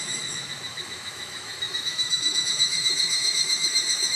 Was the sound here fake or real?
fake